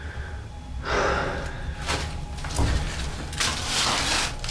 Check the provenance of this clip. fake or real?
real